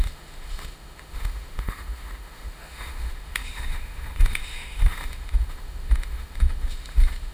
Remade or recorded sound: remade